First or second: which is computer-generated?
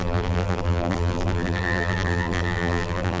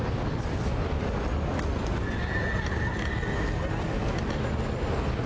first